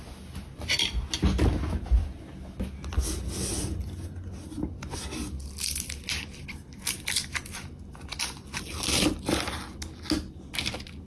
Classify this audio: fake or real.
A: real